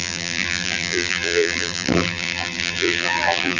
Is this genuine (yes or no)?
no